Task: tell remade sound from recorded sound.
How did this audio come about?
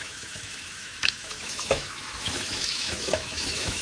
remade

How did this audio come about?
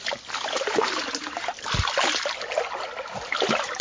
recorded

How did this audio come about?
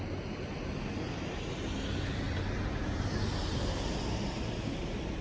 recorded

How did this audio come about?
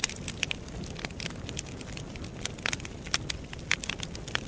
recorded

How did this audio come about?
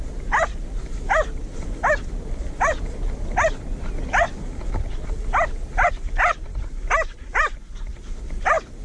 recorded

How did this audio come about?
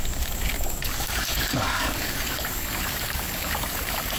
remade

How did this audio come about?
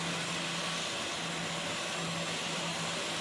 recorded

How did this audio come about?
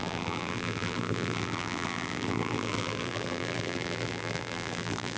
remade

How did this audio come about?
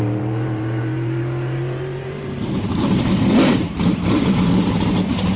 remade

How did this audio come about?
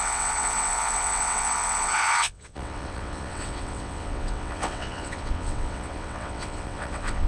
remade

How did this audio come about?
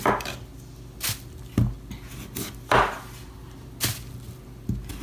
recorded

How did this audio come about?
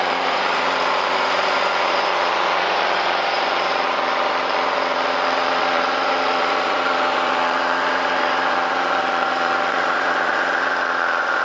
remade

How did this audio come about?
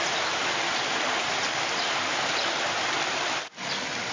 remade